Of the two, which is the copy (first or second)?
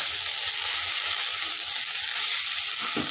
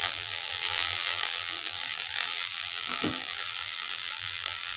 second